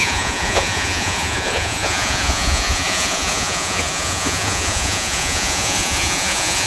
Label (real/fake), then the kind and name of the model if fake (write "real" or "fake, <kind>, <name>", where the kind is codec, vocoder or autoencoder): fake, vocoder, Vocos